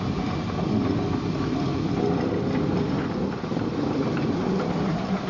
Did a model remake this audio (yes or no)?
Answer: no